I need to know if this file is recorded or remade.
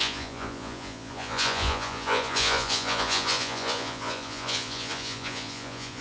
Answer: remade